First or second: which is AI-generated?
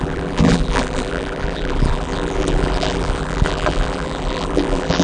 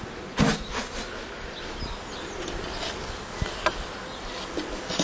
first